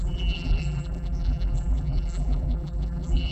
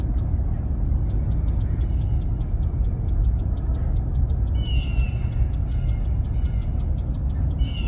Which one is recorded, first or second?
second